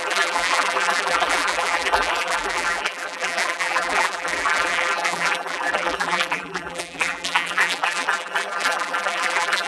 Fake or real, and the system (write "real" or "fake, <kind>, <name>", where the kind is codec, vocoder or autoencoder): fake, vocoder, BigVGAN v2